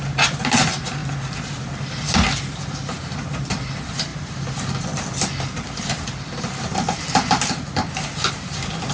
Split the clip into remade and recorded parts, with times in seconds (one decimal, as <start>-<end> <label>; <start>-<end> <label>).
0.0-8.9 recorded